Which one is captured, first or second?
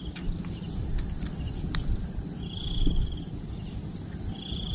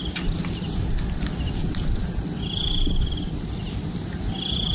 second